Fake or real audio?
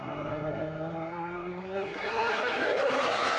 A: fake